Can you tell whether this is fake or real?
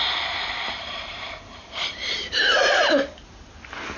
fake